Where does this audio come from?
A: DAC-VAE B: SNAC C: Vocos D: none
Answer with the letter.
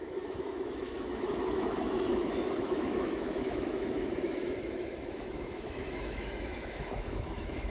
A